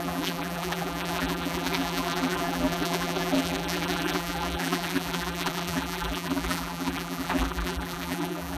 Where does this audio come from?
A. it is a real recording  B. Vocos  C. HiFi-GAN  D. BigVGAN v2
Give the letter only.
D